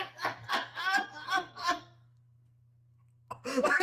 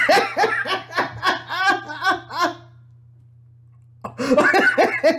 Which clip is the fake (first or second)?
first